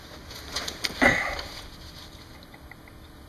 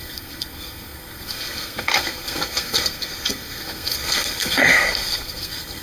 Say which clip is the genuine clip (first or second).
first